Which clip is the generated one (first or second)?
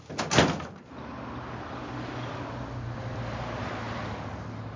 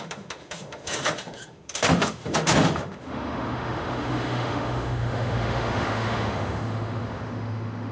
second